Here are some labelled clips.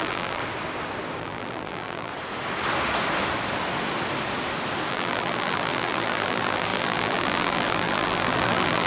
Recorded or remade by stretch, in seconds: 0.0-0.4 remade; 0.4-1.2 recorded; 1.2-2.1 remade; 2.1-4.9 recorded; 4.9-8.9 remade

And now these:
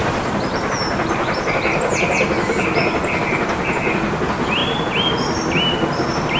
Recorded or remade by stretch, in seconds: 0.0-1.6 remade; 1.6-6.4 recorded

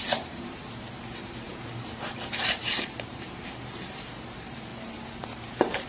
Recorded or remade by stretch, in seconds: 0.0-0.6 remade; 0.6-1.7 recorded; 1.7-2.6 remade; 2.6-3.1 recorded; 3.1-4.7 remade; 4.7-5.5 recorded; 5.5-5.9 remade

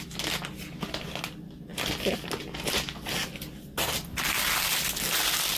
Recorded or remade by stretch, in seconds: 0.0-5.6 recorded

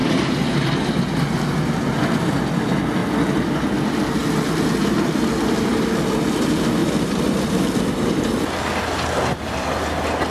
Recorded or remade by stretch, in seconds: 0.0-1.0 remade; 1.0-3.0 recorded; 3.0-3.8 remade; 3.8-4.2 recorded; 4.2-4.7 remade; 4.7-6.8 recorded; 6.8-8.2 remade; 8.2-10.3 recorded

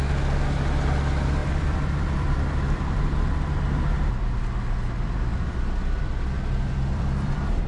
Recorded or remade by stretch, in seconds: 0.0-1.4 recorded; 1.4-3.3 remade; 3.3-5.3 recorded; 5.3-7.7 remade